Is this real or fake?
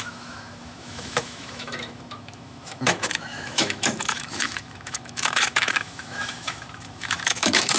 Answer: fake